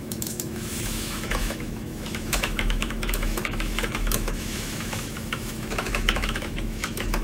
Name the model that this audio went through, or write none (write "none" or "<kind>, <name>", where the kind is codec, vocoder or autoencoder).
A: autoencoder, DAC-VAE